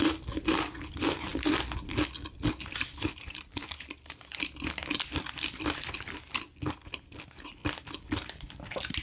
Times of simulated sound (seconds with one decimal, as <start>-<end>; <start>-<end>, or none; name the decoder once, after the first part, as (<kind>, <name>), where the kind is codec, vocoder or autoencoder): none